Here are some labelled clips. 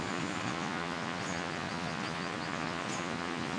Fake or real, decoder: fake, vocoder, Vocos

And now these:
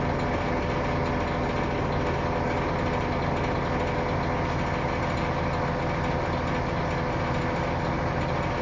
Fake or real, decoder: real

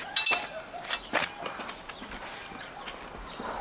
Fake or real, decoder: real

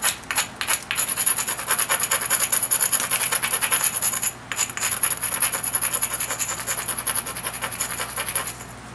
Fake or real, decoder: real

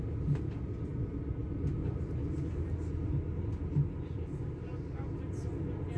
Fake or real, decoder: real